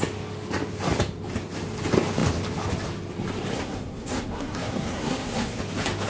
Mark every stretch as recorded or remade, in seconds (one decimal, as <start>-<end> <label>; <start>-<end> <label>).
0.0-3.5 recorded; 3.5-5.6 remade; 5.6-6.1 recorded